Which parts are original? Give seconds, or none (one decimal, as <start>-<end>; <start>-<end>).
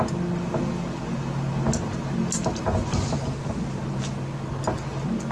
0.0-5.3